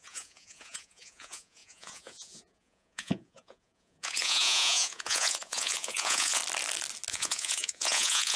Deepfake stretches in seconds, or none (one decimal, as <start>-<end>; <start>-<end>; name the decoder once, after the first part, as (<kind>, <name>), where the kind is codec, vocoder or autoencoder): 0.0-6.4 (vocoder, Vocos); 7.1-8.4